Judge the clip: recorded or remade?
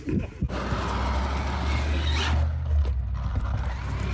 recorded